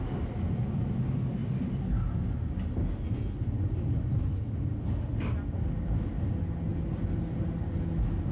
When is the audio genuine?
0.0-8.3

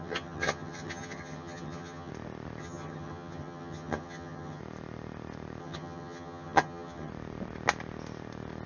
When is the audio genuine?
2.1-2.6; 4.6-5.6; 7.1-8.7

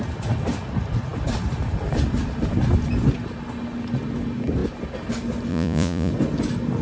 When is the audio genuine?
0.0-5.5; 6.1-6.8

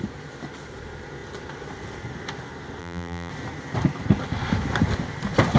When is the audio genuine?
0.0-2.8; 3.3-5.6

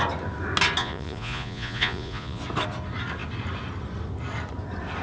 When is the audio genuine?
0.0-0.8; 2.4-5.0

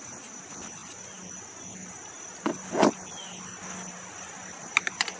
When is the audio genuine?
0.0-5.2